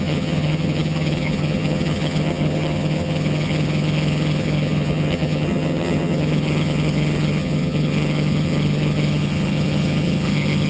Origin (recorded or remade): remade